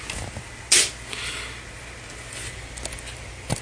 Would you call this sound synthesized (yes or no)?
no